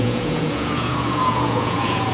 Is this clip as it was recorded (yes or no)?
no